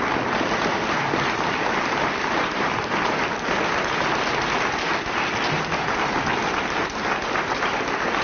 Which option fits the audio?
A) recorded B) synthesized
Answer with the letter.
A